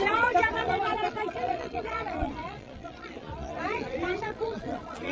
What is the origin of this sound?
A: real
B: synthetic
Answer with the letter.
B